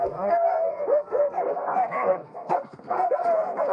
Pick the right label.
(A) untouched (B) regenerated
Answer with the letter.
B